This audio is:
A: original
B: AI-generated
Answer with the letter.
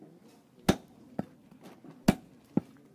A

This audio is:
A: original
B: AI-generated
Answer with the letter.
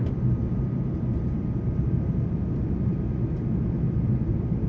A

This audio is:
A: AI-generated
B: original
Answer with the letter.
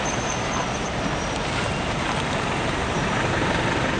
A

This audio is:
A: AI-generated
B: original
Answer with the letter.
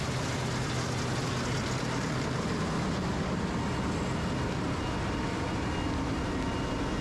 B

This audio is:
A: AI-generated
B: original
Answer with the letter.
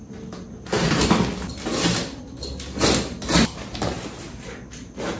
B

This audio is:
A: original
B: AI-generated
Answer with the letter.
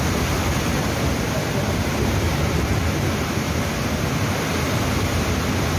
A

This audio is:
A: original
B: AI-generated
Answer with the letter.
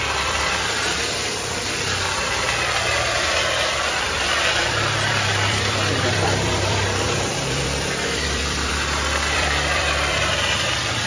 B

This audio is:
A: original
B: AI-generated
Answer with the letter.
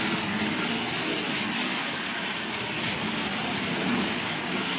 A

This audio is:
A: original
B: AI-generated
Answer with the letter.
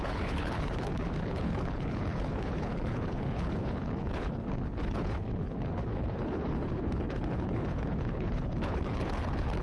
B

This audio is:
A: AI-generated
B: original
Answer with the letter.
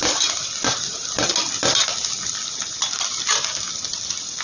B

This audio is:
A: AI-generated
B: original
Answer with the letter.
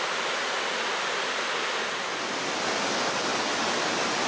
B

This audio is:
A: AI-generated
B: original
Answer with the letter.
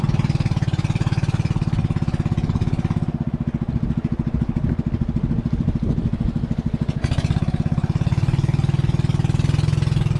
B